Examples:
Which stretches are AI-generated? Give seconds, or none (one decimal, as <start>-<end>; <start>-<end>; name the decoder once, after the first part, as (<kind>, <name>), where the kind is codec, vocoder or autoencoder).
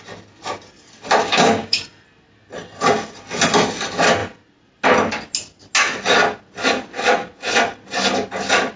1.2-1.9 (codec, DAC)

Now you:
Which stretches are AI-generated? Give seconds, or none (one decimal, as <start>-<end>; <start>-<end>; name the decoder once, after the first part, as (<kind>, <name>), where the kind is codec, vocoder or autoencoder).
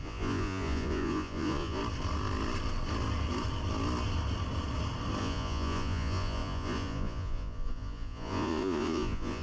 0.0-1.8 (vocoder, Vocos); 5.2-9.4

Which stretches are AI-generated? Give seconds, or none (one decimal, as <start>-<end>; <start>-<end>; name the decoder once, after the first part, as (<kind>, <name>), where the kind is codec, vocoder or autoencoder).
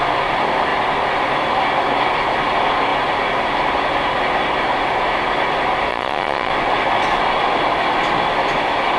5.9-6.5 (vocoder, Vocos)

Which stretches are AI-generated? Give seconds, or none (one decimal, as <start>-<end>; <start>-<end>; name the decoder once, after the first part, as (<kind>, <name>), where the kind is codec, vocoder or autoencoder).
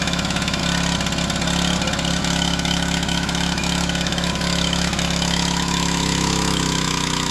0.0-0.6 (autoencoder, DAC-VAE); 2.2-7.3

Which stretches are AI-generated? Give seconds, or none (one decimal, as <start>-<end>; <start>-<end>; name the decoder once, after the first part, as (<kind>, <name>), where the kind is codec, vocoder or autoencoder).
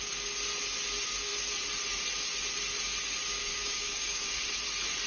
3.4-4.4 (codec, DAC)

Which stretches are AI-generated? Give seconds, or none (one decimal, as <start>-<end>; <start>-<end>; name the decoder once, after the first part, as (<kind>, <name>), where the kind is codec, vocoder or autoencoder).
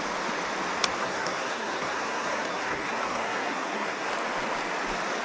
1.0-4.1 (codec, SNAC)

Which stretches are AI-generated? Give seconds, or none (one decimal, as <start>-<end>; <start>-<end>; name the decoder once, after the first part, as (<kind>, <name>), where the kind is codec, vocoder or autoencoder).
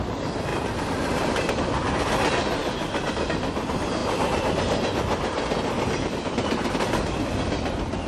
none